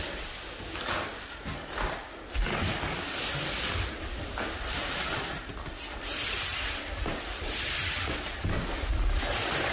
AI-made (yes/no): no